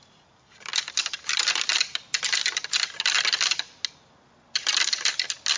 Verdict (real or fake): real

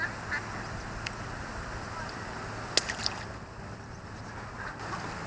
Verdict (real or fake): real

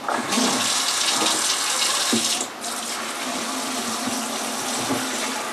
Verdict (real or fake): real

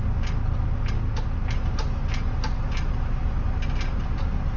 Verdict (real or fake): real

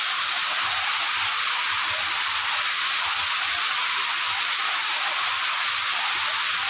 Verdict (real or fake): real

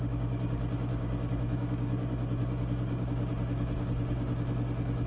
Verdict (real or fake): fake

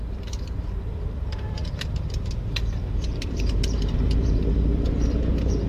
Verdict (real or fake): fake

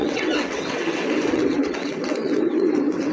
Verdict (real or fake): fake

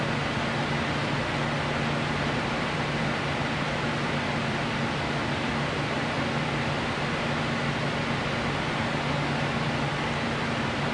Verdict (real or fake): real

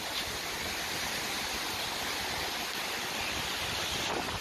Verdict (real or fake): real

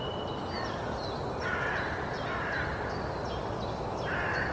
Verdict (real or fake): real